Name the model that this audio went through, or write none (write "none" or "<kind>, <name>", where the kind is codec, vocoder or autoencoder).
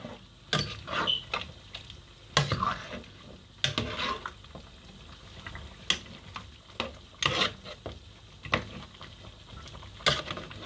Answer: none